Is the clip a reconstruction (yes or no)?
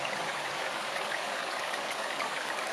yes